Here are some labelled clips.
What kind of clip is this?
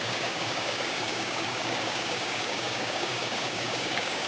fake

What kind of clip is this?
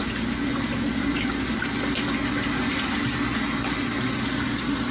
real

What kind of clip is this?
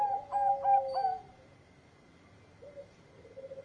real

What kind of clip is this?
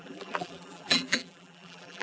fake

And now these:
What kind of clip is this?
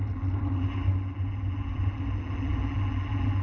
real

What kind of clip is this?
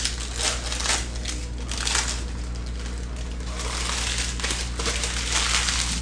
real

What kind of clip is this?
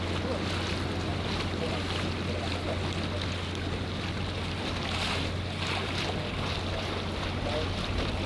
real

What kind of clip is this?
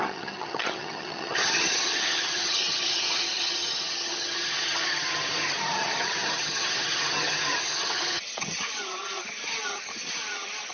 fake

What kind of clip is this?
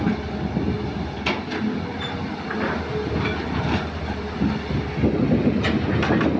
real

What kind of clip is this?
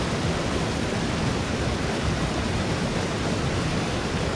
real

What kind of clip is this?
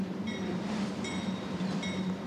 fake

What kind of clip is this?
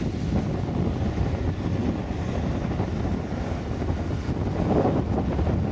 real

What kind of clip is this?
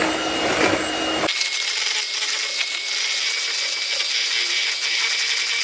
real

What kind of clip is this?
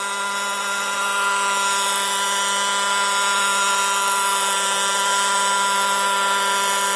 real